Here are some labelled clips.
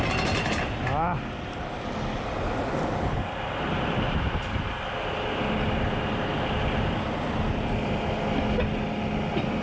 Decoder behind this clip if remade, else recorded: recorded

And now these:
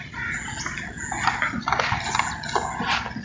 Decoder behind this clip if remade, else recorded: recorded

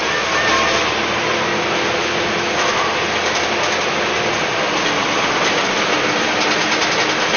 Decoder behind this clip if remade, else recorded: recorded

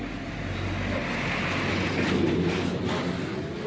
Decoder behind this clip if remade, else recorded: recorded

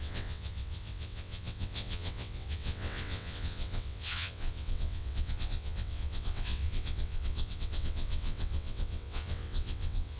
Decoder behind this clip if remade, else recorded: remade, vocoder, WaveNeXt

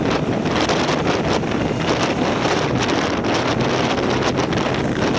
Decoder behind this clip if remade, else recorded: recorded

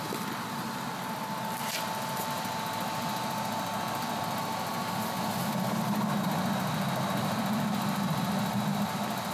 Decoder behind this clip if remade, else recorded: recorded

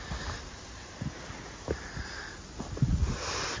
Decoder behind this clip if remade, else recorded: recorded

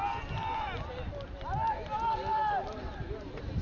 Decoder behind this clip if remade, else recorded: recorded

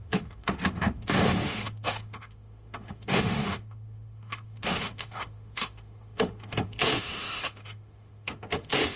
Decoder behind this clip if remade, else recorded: remade, autoencoder, DAC-VAE